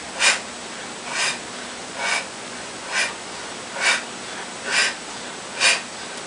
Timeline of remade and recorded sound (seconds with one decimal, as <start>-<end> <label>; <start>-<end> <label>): 0.0-1.8 recorded; 1.8-3.5 remade; 3.5-6.3 recorded